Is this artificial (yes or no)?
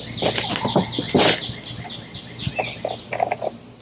no